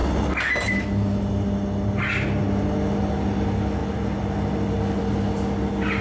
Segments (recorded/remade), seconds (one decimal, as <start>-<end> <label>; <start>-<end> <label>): 0.0-6.0 recorded